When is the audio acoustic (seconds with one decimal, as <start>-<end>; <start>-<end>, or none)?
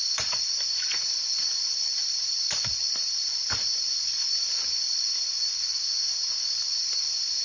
3.3-3.8; 5.5-6.4